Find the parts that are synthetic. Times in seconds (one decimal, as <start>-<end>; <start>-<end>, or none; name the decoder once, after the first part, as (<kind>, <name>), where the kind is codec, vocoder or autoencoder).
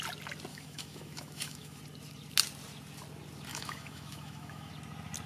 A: 0.5-1.8 (autoencoder, DAC-VAE); 3.5-4.7